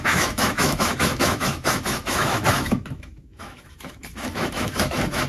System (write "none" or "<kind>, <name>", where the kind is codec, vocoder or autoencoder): autoencoder, DAC-VAE